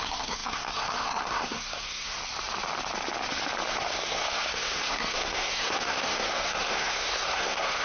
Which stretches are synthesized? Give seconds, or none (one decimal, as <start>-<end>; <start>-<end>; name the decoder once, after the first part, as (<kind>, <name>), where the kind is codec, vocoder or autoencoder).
0.0-2.2 (codec, SNAC); 3.7-7.8